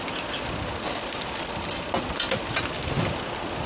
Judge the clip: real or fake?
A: real